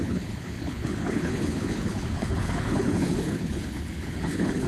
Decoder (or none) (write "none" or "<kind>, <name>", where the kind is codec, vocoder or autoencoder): codec, HILCodec